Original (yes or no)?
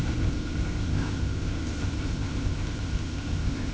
no